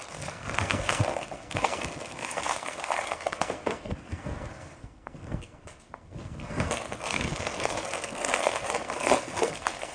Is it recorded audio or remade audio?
remade